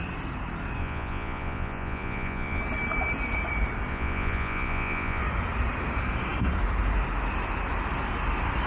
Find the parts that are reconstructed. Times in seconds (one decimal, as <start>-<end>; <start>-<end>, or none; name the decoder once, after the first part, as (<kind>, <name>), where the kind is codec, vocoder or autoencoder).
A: 0.8-2.6 (vocoder, Vocos); 3.9-5.2